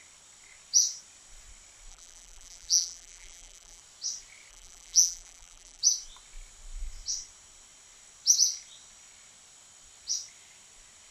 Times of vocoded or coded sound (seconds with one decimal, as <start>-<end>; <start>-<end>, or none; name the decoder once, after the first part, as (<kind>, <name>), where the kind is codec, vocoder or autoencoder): 1.9-3.8 (vocoder, BigVGAN v2); 4.5-5.8